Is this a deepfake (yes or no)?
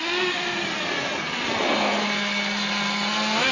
no